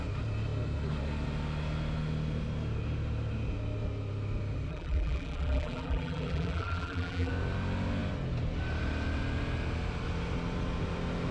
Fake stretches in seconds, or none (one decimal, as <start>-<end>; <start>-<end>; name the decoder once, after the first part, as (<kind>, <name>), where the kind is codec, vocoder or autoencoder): 4.7-7.3 (vocoder, BigVGAN v2)